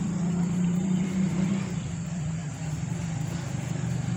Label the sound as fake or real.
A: fake